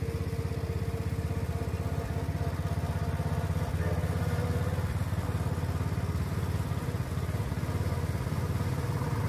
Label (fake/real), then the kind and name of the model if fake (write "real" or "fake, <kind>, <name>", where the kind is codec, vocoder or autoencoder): real